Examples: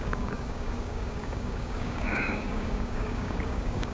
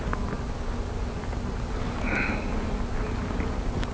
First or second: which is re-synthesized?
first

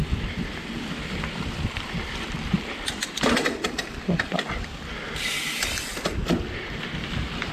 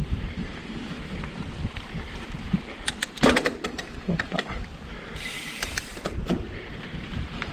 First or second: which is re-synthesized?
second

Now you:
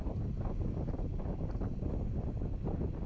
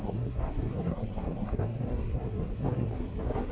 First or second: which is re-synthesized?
second